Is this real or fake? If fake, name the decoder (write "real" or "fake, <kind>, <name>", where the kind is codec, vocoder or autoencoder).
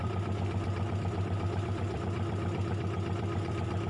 fake, vocoder, BigVGAN v2